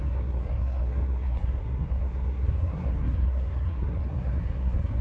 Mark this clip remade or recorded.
remade